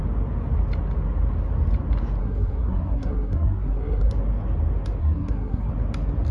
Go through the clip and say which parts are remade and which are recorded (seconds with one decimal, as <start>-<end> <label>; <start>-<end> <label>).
0.0-2.2 recorded; 2.2-4.1 remade; 4.1-5.0 recorded; 5.0-5.7 remade; 5.7-6.3 recorded

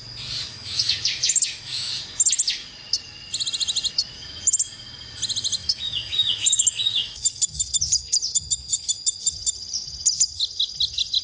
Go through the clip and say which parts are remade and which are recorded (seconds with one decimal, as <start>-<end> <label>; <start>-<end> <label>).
0.0-0.5 recorded; 0.5-1.9 remade; 1.9-5.6 recorded; 5.6-7.6 remade; 7.6-11.2 recorded

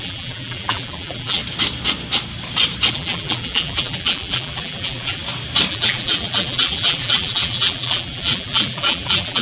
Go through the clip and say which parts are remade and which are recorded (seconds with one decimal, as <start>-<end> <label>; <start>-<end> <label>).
0.0-1.4 remade; 1.4-2.9 recorded; 2.9-5.2 remade; 5.2-5.7 recorded; 5.7-9.4 remade

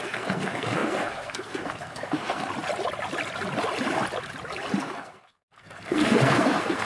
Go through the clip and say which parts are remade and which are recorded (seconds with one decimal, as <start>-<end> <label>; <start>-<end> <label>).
0.0-2.5 remade; 2.5-4.8 recorded; 4.8-6.8 remade

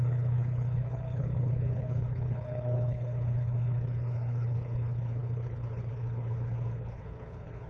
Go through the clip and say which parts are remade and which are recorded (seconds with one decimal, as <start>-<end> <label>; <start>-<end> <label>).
0.0-7.7 remade

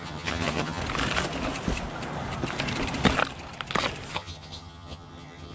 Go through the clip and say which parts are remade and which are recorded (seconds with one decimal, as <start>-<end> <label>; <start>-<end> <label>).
0.0-0.8 remade; 0.8-4.1 recorded; 4.1-5.5 remade

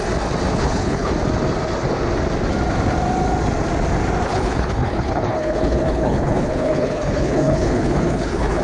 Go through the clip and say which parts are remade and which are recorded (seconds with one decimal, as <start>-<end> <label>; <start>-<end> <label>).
0.0-0.5 recorded; 0.5-1.1 remade; 1.1-4.3 recorded; 4.3-8.6 remade

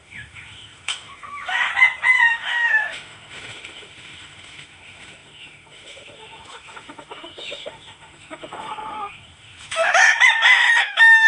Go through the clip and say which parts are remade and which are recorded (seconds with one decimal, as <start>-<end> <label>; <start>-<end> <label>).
0.0-1.7 remade; 1.7-2.3 recorded; 2.3-10.0 remade; 10.0-10.8 recorded; 10.8-11.3 remade